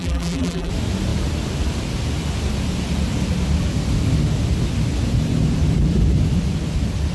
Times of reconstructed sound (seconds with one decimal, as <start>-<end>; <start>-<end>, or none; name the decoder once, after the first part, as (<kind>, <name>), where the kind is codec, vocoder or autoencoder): 0.0-0.7 (vocoder, BigVGAN v2)